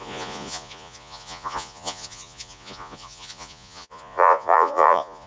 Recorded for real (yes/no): no